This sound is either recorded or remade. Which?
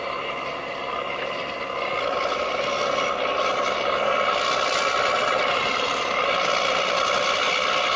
recorded